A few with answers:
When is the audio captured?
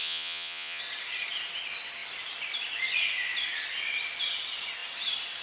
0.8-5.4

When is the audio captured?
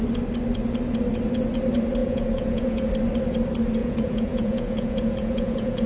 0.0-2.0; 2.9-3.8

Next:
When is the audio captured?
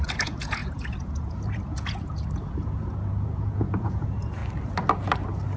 4.4-5.6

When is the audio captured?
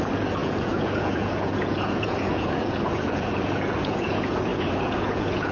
none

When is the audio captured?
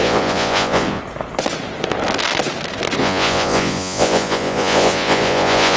1.0-3.0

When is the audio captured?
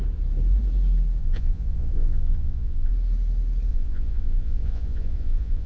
0.0-1.2; 2.9-3.7